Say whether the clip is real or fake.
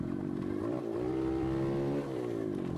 fake